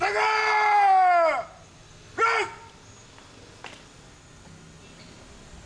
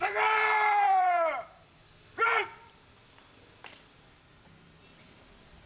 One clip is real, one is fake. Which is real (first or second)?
first